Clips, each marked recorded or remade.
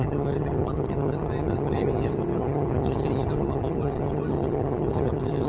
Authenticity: remade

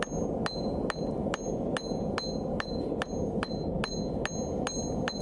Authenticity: recorded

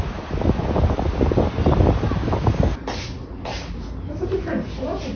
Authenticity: recorded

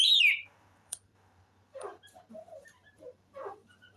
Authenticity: remade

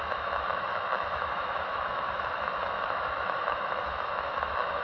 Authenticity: remade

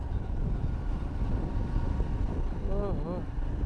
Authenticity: recorded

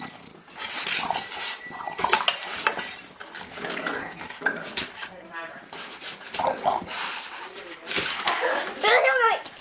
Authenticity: recorded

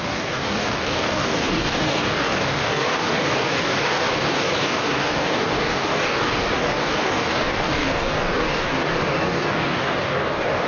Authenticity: remade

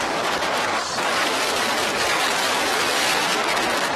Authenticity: remade